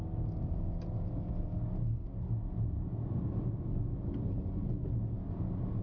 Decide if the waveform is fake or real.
real